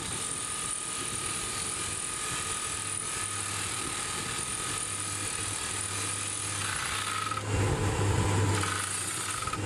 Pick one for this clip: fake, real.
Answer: real